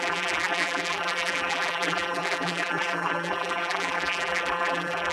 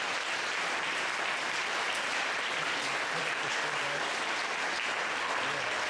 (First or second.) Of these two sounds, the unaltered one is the second